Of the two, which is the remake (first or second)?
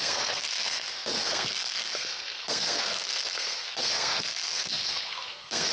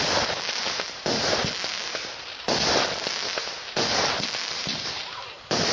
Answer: first